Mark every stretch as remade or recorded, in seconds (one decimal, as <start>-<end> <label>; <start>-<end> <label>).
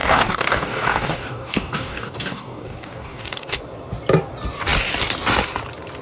0.0-3.6 remade; 3.6-6.0 recorded